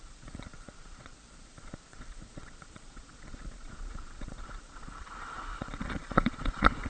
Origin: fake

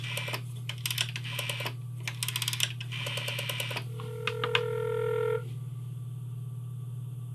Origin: real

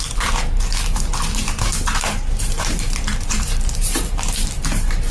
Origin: fake